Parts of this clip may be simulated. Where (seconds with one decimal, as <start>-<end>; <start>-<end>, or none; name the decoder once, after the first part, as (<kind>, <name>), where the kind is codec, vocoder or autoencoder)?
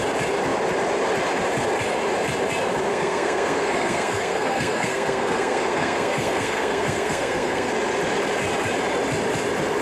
2.9-7.7 (codec, SNAC)